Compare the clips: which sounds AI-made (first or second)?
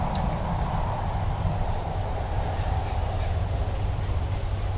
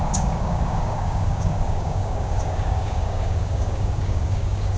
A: second